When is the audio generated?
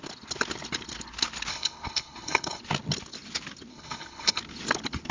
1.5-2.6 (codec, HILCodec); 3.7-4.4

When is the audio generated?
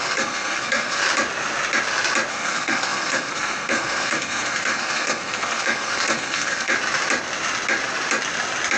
0.0-1.0 (codec, SNAC); 2.3-6.7